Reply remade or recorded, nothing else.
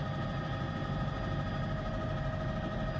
recorded